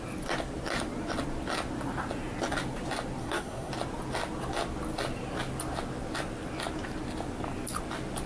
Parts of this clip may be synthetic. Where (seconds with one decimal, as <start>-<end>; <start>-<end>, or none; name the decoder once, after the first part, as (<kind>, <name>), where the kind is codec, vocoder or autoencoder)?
3.2-3.7 (codec, SNAC)